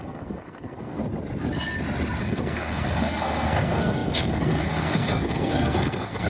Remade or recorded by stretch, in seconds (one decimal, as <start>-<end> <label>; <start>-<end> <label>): 0.0-1.0 remade; 1.0-2.2 recorded; 2.2-6.3 remade